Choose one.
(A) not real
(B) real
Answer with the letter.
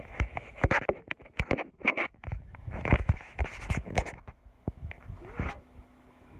A